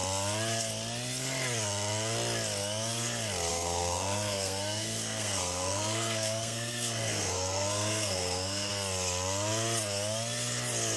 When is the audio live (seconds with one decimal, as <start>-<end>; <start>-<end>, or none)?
0.0-3.5; 8.7-11.0